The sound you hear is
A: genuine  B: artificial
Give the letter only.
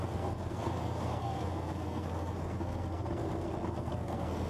B